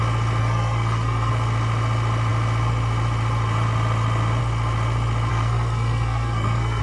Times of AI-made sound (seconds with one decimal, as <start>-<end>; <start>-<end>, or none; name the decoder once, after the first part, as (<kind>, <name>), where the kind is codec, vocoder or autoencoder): 0.4-1.3 (codec, SNAC); 5.3-6.8